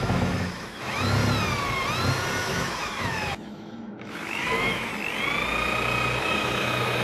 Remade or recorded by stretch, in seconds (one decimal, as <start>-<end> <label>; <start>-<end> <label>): 0.0-1.2 remade; 1.2-2.4 recorded; 2.4-4.9 remade; 4.9-6.2 recorded; 6.2-7.0 remade